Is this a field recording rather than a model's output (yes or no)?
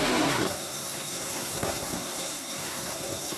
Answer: no